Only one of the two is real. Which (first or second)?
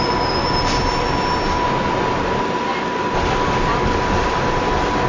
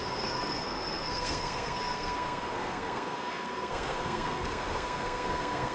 first